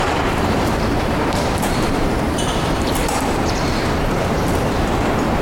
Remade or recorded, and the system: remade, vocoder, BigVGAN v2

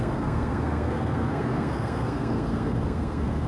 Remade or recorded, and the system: remade, codec, SNAC